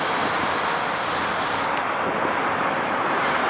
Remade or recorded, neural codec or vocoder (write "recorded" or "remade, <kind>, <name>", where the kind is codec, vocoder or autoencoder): recorded